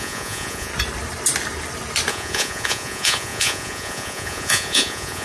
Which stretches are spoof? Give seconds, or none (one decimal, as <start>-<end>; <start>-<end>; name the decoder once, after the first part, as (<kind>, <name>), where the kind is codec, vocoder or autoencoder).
0.0-0.7 (vocoder, Vocos); 2.1-5.2

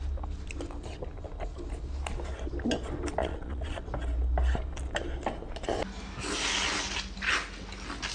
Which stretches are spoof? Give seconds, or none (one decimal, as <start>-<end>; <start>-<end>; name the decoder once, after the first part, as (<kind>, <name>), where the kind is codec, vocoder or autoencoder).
3.2-3.8 (vocoder, Vocos)

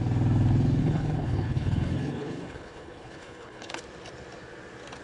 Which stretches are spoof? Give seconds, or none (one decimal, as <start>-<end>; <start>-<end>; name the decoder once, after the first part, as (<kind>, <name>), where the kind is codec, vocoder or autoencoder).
0.8-3.8 (codec, HILCodec)

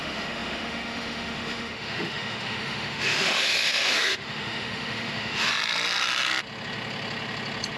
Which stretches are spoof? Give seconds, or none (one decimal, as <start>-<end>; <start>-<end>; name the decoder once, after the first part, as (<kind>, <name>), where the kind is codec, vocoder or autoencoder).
0.0-5.5 (autoencoder, DAC-VAE)

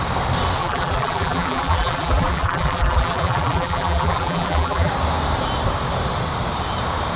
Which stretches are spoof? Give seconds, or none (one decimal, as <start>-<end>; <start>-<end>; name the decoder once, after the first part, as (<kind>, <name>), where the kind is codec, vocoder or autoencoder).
0.6-4.9 (vocoder, BigVGAN v2)

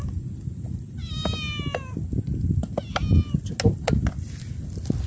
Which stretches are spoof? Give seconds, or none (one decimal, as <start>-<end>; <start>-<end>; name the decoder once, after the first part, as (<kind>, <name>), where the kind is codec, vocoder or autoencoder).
none

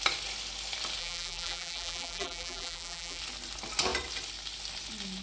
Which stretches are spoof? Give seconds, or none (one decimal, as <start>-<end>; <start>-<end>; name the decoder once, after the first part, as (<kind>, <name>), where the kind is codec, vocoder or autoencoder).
1.0-3.2 (vocoder, BigVGAN v2)

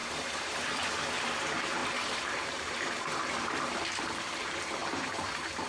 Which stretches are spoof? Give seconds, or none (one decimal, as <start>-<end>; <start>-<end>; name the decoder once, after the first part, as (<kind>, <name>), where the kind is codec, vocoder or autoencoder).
0.0-0.6 (vocoder, BigVGAN v2); 1.8-4.0; 4.8-5.7